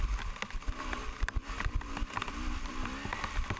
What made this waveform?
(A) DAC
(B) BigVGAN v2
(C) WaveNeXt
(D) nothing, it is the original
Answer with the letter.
D